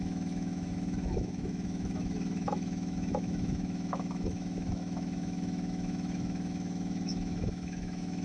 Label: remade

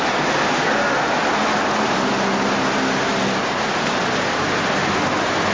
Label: recorded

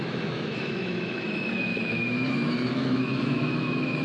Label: remade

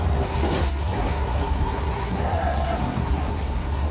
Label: remade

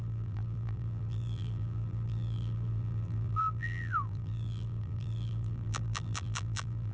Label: remade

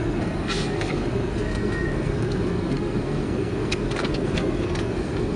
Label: remade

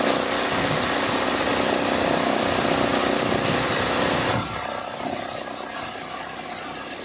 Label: recorded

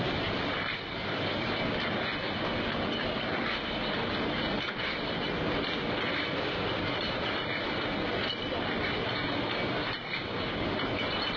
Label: recorded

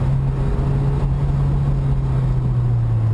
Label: recorded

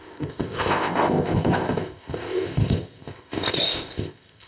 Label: remade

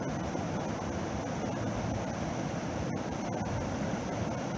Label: recorded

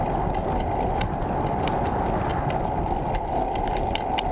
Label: recorded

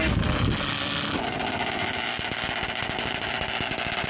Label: recorded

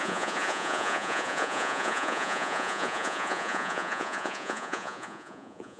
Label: remade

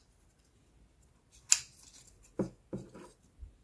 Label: recorded